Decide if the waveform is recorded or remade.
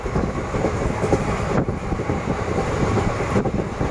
recorded